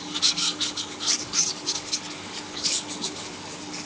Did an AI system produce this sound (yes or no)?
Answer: yes